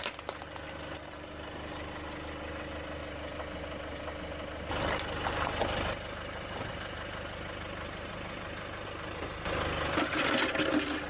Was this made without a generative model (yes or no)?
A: yes